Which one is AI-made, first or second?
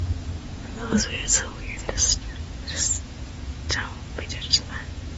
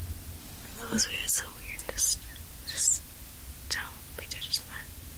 first